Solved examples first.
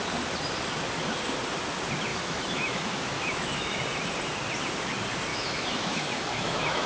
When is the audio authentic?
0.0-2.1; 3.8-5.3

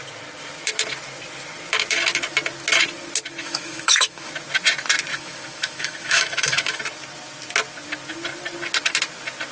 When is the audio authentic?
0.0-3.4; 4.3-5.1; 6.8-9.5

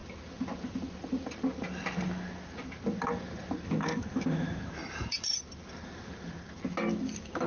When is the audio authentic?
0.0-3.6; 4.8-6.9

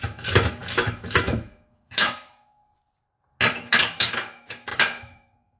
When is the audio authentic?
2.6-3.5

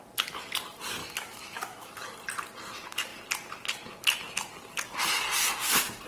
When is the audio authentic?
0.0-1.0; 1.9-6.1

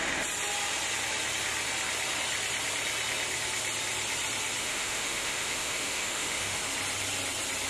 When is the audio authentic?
0.0-4.6; 6.6-7.7

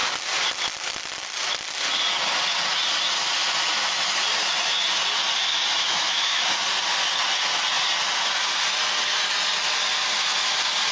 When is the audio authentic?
0.0-5.8; 6.5-10.9

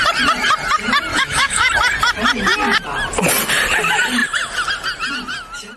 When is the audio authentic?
0.0-1.1; 1.7-5.8